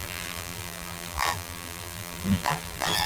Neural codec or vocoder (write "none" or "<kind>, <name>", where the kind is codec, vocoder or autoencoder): vocoder, BigVGAN v2